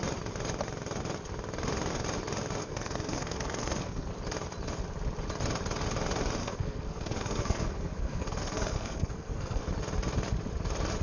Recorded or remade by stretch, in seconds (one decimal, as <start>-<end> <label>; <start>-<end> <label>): 0.0-2.6 recorded; 2.6-4.1 remade; 4.1-6.4 recorded; 6.4-9.6 remade; 9.6-11.0 recorded